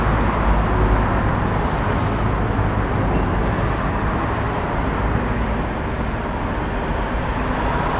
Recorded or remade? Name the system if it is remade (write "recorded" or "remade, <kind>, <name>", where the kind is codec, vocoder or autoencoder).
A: recorded